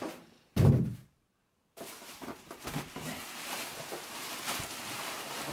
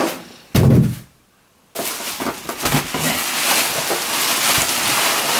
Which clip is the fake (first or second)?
first